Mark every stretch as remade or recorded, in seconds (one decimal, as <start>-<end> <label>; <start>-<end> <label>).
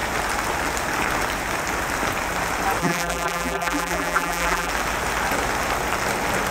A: 0.0-2.8 recorded; 2.8-4.7 remade; 4.7-6.5 recorded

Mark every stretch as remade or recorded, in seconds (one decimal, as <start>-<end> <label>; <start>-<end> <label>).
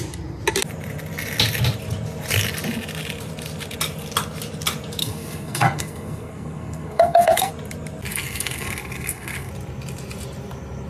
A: 0.0-5.0 recorded; 5.0-7.5 remade; 7.5-8.1 recorded; 8.1-9.5 remade; 9.5-10.9 recorded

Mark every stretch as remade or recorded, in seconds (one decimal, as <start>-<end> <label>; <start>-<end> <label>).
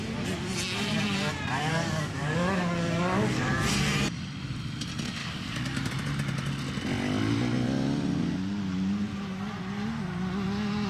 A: 0.0-1.7 recorded; 1.7-3.5 remade; 3.5-5.2 recorded; 5.2-5.9 remade; 5.9-10.9 recorded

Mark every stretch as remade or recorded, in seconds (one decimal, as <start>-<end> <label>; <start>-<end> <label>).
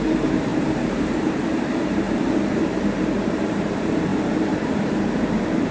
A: 0.0-5.7 remade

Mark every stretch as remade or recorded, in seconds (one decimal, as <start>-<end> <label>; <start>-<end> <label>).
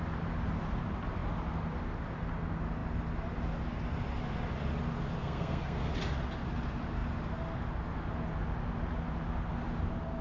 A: 0.0-5.2 recorded; 5.2-5.9 remade; 5.9-10.2 recorded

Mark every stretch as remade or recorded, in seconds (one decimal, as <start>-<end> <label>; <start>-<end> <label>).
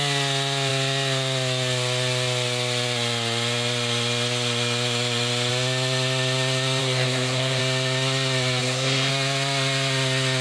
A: 0.0-6.8 recorded; 6.8-7.6 remade; 7.6-8.6 recorded; 8.6-9.1 remade; 9.1-10.4 recorded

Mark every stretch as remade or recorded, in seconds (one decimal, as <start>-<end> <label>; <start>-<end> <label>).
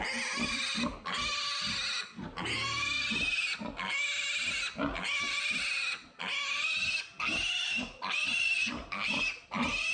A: 0.0-8.3 recorded; 8.3-9.2 remade; 9.2-9.9 recorded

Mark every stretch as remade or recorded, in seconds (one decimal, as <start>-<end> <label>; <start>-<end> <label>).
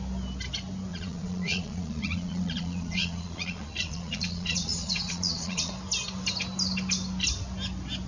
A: 0.0-0.9 recorded; 0.9-5.7 remade; 5.7-8.1 recorded